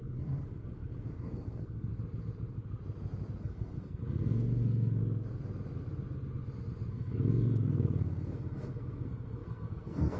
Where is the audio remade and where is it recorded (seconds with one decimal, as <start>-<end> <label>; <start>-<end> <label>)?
0.0-1.9 remade; 1.9-3.4 recorded; 3.4-5.0 remade; 5.0-6.9 recorded; 6.9-10.2 remade